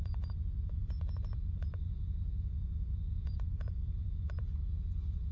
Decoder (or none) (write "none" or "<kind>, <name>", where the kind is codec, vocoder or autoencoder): vocoder, Vocos